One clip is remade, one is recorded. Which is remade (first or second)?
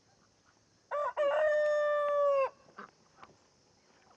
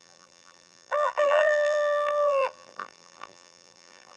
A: second